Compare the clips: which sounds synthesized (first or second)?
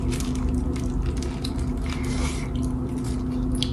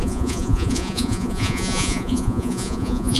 second